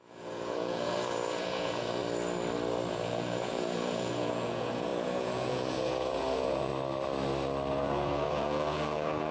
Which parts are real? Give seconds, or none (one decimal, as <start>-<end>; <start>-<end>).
2.0-2.9; 6.7-7.7